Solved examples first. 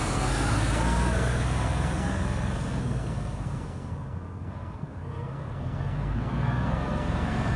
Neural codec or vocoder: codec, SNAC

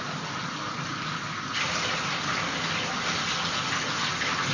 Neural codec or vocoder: none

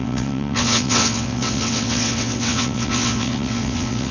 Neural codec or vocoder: vocoder, WaveNeXt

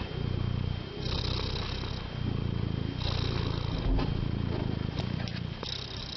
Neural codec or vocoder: none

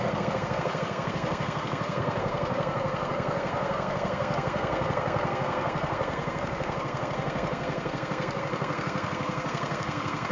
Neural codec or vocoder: codec, SNAC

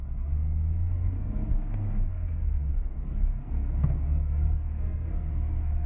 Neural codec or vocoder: codec, SNAC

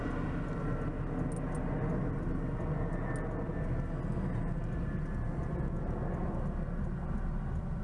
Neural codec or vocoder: none